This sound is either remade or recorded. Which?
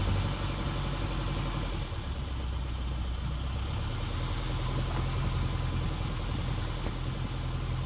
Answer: recorded